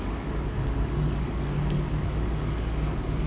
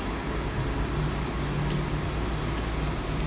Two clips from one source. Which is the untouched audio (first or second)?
second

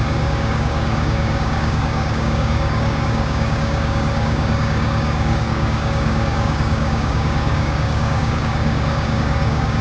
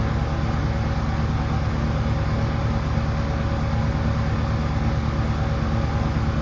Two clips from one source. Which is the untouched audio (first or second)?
second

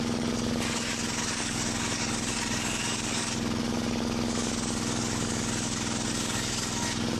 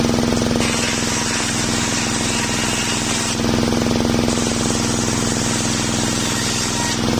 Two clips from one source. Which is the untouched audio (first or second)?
second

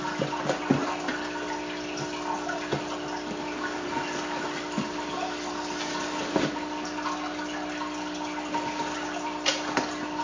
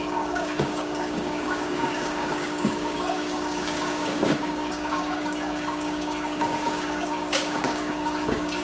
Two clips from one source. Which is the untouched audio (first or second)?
first